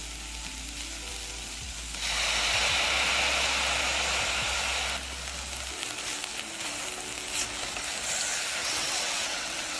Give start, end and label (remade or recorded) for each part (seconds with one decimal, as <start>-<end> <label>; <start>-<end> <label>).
0.0-8.6 recorded; 8.6-9.8 remade